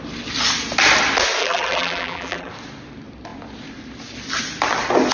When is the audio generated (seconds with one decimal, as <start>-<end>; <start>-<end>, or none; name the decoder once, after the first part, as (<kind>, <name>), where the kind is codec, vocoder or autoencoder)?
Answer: 1.4-2.5 (vocoder, BigVGAN v2)